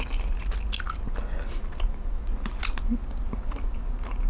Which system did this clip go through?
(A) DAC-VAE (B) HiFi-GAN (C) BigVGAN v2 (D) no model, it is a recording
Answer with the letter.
D